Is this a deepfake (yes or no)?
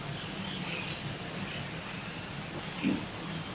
no